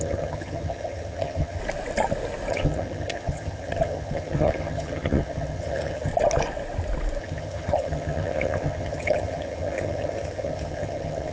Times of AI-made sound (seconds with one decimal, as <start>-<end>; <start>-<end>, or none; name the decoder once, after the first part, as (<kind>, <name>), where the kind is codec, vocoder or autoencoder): 0.0-1.6 (vocoder, HiFi-GAN); 2.5-6.1; 7.2-11.3